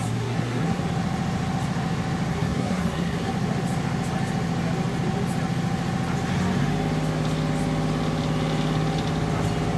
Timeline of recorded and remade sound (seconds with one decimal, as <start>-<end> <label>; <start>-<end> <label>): 0.0-0.8 remade; 0.8-2.3 recorded; 2.3-3.3 remade; 3.3-9.8 recorded